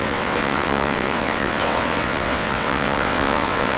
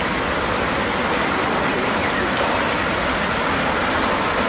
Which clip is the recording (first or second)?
second